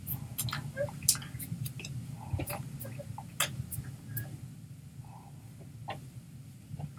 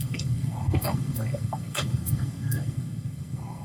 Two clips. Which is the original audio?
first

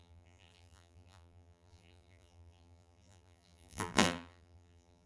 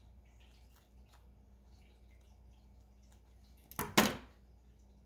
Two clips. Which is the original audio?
second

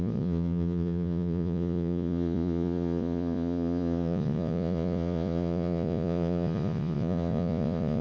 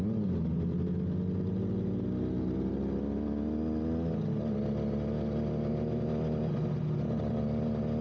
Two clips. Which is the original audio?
second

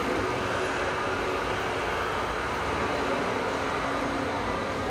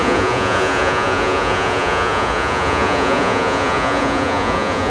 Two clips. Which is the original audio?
first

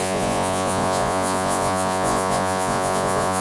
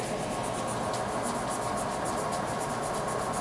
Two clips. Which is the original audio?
second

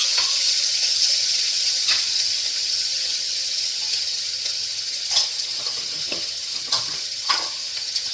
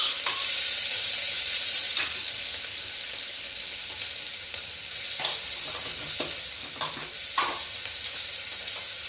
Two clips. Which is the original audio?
second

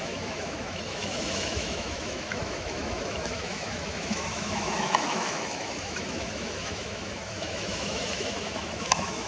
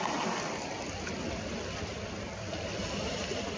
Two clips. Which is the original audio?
second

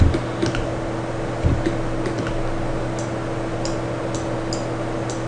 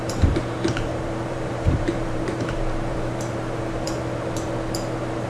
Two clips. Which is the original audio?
first